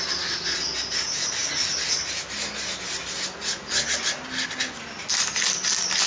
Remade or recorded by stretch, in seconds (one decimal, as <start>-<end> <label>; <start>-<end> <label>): 0.0-6.1 recorded